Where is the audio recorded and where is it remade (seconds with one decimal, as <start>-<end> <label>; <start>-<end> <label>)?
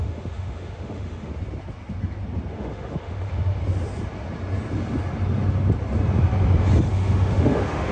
0.0-1.3 remade; 1.3-2.5 recorded; 2.5-3.6 remade; 3.6-6.9 recorded; 6.9-7.9 remade